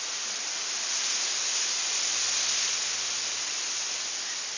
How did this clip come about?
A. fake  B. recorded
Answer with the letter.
B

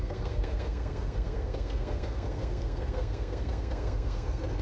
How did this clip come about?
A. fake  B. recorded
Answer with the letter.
A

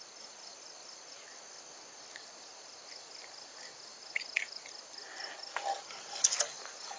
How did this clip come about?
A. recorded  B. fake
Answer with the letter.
A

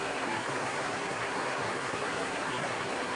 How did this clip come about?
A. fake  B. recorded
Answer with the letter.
A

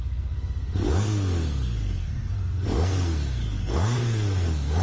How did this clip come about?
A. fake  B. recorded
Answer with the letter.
A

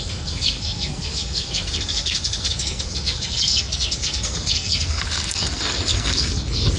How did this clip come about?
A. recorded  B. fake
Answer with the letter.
B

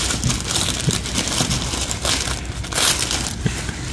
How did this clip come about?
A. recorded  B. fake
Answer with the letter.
A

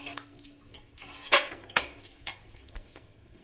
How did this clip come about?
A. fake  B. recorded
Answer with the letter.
A